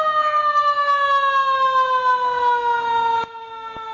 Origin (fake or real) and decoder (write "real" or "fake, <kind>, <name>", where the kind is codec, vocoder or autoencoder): fake, autoencoder, DAC-VAE